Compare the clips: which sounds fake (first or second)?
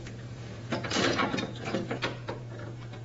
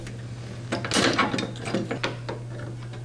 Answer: first